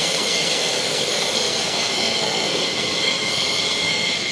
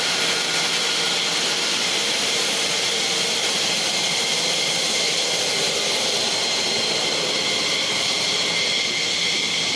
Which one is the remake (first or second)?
first